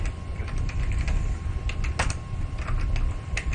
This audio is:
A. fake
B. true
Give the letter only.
B